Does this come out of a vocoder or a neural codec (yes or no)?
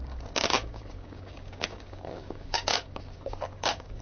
yes